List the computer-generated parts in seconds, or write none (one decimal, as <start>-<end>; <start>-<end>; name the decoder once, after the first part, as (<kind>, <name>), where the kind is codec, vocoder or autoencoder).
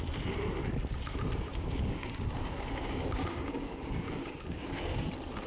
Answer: 1.5-4.8 (codec, DAC)